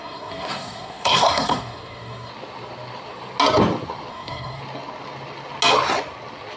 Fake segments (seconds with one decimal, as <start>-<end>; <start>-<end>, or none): 0.0-2.3; 4.1-4.6